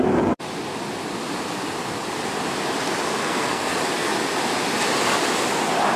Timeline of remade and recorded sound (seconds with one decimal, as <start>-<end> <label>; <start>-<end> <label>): 0.0-3.2 recorded; 3.2-3.7 remade; 3.7-6.0 recorded